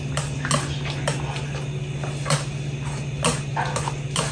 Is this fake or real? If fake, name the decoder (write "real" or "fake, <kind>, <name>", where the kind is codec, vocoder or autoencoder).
real